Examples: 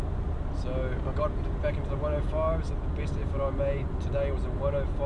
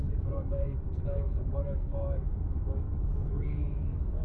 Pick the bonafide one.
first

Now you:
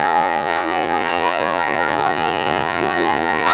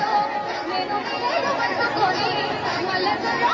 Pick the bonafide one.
second